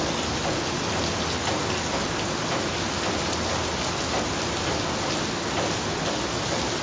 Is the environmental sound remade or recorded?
recorded